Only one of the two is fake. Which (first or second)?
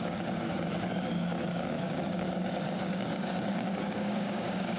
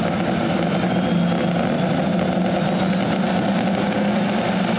first